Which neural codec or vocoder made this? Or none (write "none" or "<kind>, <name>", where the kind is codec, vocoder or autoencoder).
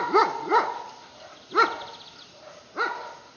none